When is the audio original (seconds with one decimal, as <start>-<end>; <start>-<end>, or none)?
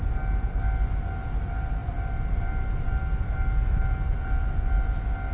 0.0-5.3